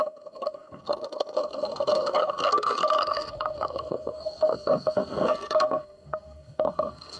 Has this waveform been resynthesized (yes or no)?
yes